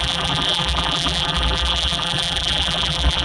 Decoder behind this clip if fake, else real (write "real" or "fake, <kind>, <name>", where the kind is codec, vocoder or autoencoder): fake, vocoder, BigVGAN v2